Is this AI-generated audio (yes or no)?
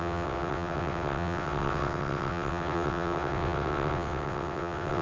yes